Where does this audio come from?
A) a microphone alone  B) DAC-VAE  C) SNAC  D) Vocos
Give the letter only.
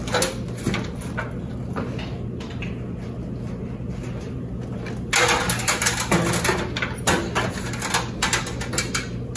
A